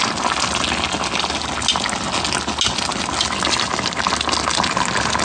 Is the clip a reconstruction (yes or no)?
no